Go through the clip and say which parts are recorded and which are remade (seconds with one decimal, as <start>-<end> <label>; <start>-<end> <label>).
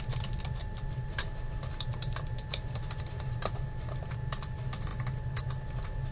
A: 0.0-0.6 recorded; 0.6-4.3 remade; 4.3-6.1 recorded